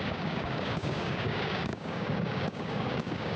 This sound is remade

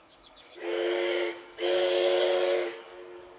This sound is remade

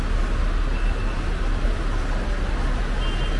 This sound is recorded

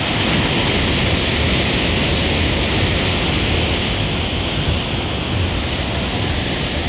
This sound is recorded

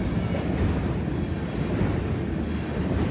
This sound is recorded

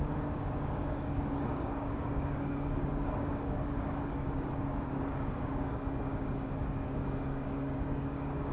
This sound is remade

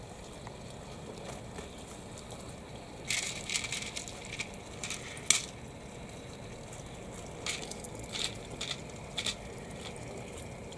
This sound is recorded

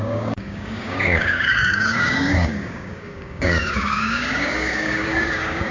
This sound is remade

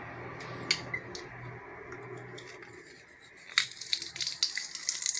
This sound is recorded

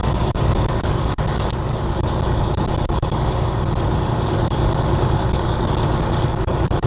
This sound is remade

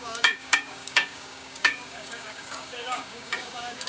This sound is remade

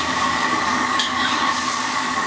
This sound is remade